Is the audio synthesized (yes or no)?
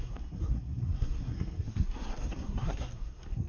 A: yes